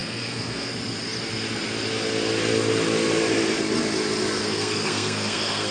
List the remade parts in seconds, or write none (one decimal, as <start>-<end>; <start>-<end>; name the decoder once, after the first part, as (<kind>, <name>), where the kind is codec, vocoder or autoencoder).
0.0-0.7 (codec, SNAC); 4.4-5.7